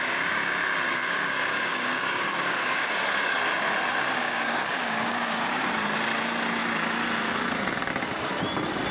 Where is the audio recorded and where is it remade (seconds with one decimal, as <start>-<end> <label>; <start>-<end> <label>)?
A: 0.0-0.9 recorded; 0.9-3.0 remade; 3.0-4.2 recorded; 4.2-5.6 remade; 5.6-8.9 recorded